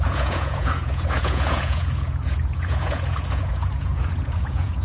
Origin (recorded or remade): remade